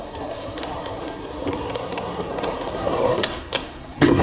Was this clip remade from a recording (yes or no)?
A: yes